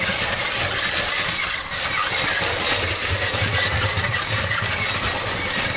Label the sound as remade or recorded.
recorded